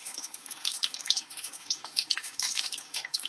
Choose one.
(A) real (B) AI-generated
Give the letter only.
B